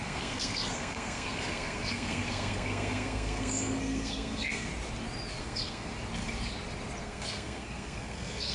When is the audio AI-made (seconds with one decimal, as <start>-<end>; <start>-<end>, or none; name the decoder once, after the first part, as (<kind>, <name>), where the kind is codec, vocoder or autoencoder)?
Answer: 0.0-4.7 (codec, SNAC); 5.4-5.9; 7.0-8.5